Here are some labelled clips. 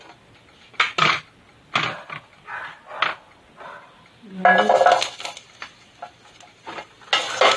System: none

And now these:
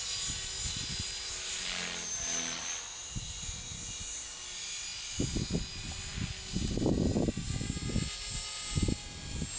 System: none